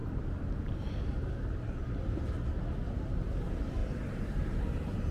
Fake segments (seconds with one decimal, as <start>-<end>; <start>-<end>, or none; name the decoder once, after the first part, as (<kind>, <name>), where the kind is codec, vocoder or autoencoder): 3.8-4.6 (vocoder, BigVGAN v2)